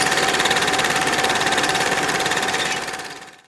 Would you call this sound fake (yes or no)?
yes